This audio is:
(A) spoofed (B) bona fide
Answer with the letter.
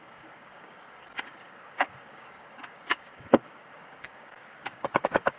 A